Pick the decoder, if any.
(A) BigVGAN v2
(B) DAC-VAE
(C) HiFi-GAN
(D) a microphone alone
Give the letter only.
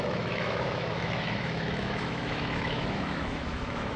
B